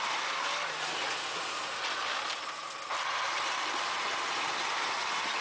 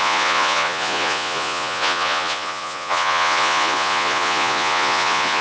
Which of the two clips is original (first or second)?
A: first